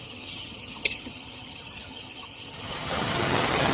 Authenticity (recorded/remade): remade